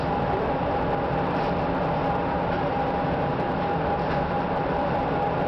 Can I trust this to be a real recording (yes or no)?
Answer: yes